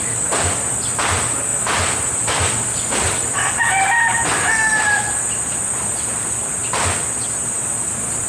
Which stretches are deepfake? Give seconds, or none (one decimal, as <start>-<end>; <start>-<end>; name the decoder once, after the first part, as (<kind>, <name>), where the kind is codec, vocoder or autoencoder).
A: 1.5-3.6 (vocoder, BigVGAN v2)